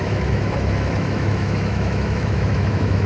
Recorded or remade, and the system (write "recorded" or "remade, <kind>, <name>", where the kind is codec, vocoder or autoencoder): remade, autoencoder, DAC-VAE